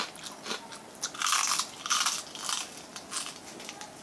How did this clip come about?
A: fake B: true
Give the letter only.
B